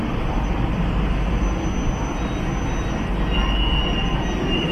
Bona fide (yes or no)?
no